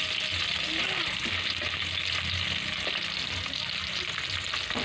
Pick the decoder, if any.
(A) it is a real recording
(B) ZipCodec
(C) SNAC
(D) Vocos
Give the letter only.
A